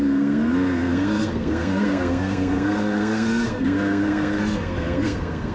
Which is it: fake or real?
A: fake